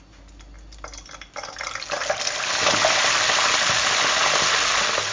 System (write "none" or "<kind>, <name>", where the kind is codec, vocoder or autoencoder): none